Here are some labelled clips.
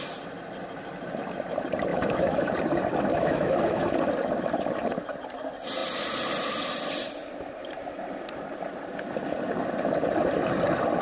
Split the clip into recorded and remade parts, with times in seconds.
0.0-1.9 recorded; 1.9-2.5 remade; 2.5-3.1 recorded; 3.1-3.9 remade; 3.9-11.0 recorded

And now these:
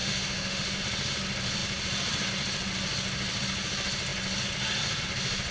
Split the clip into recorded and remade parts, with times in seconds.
0.0-0.8 remade; 0.8-5.5 recorded

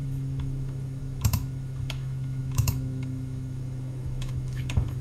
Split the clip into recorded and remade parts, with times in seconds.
0.0-5.0 remade